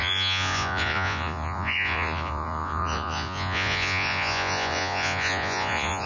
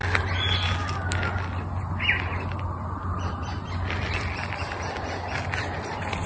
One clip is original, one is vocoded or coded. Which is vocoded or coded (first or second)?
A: first